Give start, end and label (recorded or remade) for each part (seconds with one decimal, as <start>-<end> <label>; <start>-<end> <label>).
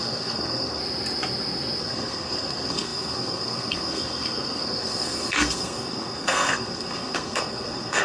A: 0.0-0.8 remade; 0.8-1.8 recorded; 1.8-8.0 remade